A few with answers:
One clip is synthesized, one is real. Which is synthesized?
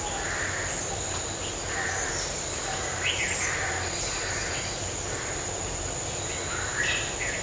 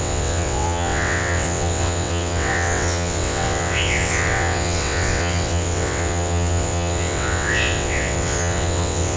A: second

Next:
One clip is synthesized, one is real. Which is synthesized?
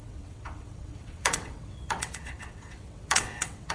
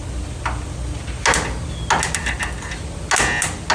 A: first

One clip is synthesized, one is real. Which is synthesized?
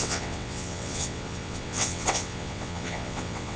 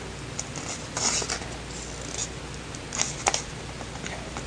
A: first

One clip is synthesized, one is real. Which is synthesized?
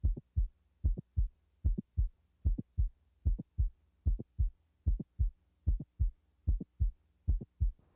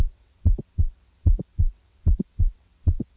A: second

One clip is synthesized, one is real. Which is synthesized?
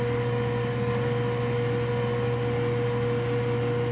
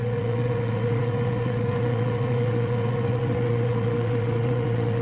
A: second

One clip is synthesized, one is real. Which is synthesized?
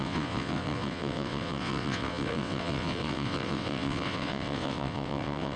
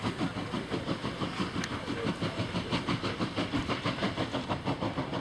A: first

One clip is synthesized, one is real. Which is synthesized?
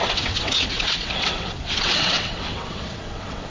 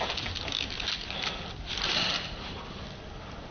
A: first